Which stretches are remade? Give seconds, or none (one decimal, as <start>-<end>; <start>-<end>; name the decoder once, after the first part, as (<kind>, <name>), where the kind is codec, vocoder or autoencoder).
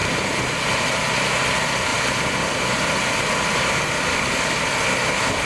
1.9-4.8 (vocoder, BigVGAN v2)